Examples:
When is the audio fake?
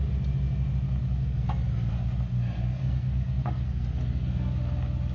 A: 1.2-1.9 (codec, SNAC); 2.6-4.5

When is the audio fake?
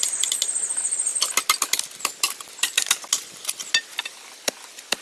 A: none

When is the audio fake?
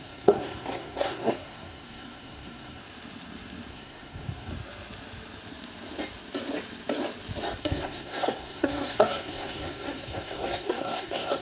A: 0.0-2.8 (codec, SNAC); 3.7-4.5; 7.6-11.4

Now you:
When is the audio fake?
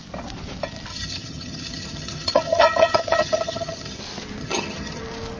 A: 0.9-4.0 (vocoder, HiFi-GAN); 4.4-5.0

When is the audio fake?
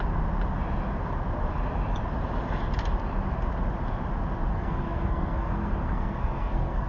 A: 4.5-6.9 (codec, SNAC)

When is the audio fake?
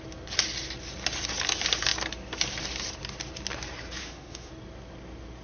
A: 4.0-4.5 (autoencoder, DAC-VAE)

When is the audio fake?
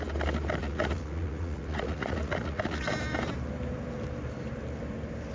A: 0.6-2.9 (vocoder, Vocos)